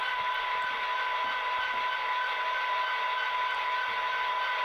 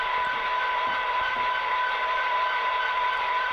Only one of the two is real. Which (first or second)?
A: first